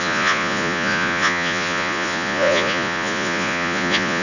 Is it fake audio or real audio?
fake